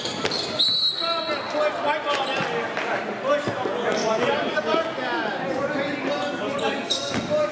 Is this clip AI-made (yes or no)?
no